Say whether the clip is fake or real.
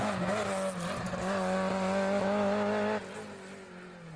real